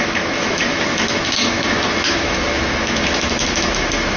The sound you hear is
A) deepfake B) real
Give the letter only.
A